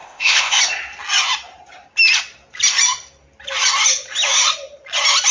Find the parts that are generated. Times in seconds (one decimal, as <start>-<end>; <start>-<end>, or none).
0.0-0.6